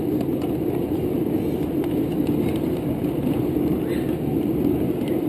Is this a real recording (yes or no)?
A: yes